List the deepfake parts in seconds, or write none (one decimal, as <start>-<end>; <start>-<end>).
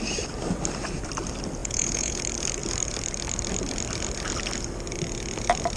1.6-2.2